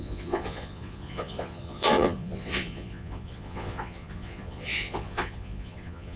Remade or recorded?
remade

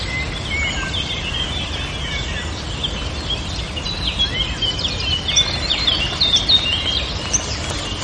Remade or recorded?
recorded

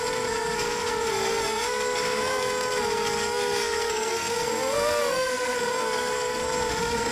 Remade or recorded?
remade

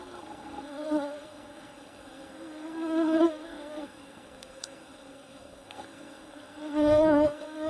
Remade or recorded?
remade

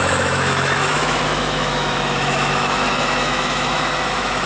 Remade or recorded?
remade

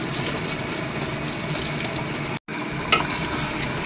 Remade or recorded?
recorded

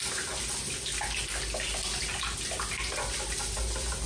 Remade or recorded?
recorded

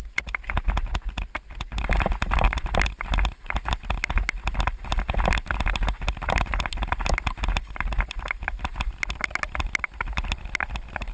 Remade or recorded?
recorded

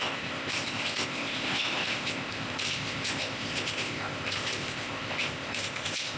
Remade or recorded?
remade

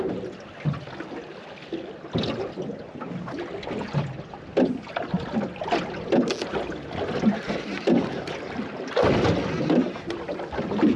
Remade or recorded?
recorded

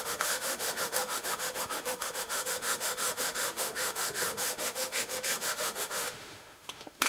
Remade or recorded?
remade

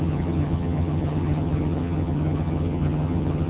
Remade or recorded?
remade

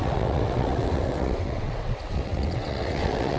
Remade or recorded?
remade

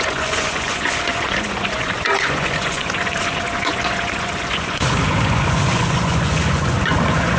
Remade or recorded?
remade